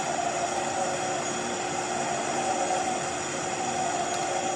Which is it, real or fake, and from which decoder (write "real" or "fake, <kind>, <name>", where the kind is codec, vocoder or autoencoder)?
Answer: real